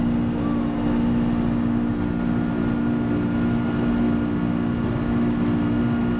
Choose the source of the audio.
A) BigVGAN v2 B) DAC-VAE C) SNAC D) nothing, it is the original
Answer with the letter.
D